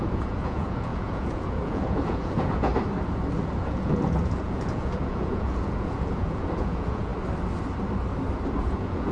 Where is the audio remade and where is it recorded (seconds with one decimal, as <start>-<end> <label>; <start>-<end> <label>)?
0.0-2.7 remade; 2.7-3.4 recorded; 3.4-7.1 remade; 7.1-8.6 recorded; 8.6-9.1 remade